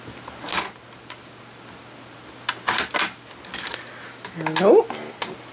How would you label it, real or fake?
real